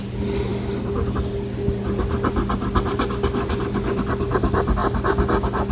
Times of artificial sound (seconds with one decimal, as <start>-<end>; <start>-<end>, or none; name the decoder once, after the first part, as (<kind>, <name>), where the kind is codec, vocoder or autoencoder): none